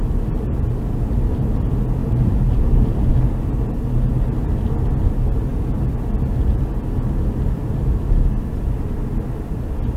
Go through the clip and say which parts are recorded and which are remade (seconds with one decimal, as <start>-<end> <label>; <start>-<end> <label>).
0.0-2.0 recorded; 2.0-3.1 remade; 3.1-10.0 recorded